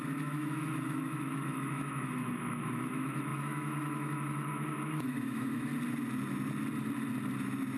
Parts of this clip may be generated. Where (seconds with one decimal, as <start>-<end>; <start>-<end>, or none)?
0.0-5.7